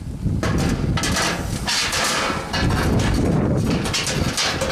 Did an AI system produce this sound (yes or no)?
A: no